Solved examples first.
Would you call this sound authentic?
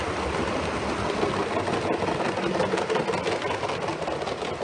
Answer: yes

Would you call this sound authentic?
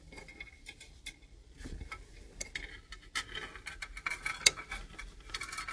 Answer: yes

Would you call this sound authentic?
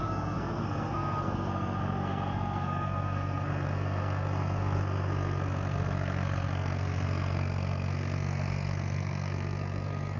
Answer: no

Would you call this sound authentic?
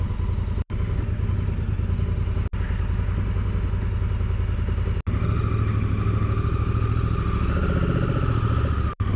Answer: yes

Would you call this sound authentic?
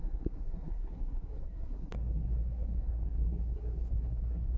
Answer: no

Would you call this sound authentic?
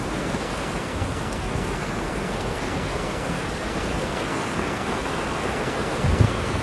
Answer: no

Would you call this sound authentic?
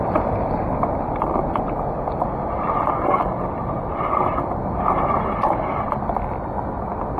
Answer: yes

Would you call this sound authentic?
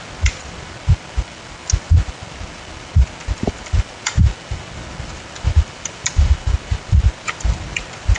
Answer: yes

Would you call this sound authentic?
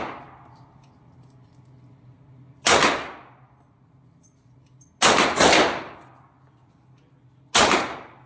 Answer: yes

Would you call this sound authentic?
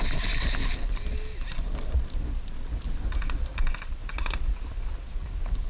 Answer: yes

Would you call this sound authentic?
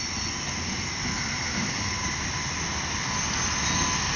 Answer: yes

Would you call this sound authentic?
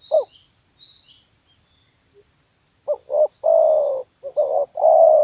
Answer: yes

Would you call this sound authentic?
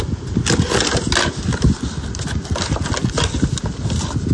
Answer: yes